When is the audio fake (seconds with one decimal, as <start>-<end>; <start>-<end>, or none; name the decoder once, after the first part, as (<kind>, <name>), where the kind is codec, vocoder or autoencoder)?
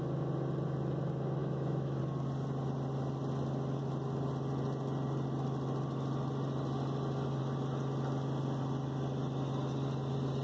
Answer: 1.4-2.0 (autoencoder, DAC-VAE)